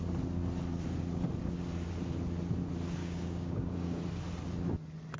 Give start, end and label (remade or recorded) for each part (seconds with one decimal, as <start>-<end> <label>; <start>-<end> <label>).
0.0-3.0 recorded; 3.0-4.0 remade; 4.0-5.2 recorded